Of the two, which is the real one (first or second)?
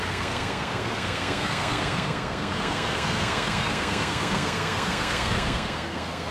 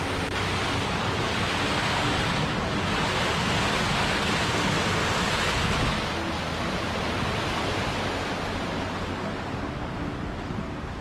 second